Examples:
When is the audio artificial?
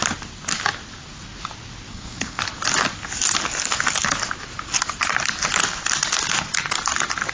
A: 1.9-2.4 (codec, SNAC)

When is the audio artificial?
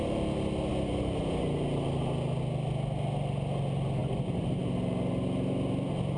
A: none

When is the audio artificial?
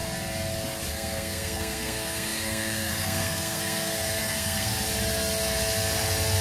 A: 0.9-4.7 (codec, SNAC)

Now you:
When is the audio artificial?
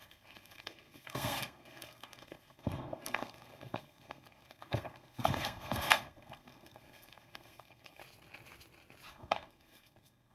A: 0.0-8.0 (codec, SNAC); 9.1-10.3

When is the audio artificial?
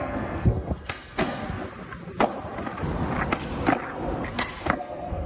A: 0.0-1.4 (codec, SNAC); 4.6-5.3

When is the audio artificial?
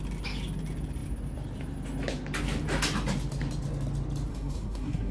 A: 4.3-5.1 (codec, SNAC)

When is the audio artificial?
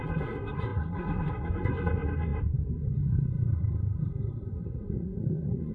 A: 0.0-5.7 (codec, SNAC)